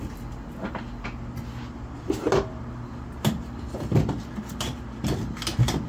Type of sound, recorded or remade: recorded